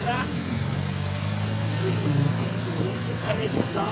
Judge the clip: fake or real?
fake